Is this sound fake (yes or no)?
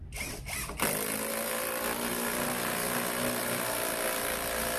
no